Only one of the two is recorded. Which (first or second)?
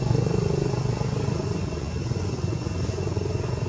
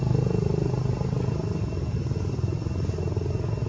second